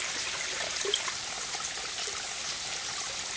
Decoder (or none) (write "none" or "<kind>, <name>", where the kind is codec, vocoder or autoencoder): none